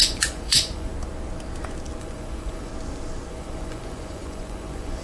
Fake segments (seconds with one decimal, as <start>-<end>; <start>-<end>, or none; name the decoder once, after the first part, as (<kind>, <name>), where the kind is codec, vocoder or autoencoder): 0.0-0.9 (vocoder, Vocos); 2.0-2.7; 3.3-5.0